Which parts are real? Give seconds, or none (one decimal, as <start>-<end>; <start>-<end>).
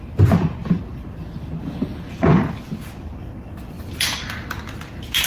0.0-0.6; 1.3-2.3